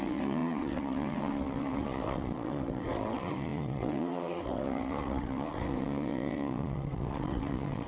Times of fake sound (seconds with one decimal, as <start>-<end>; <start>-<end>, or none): 0.0-7.9